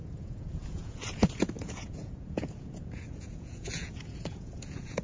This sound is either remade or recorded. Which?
remade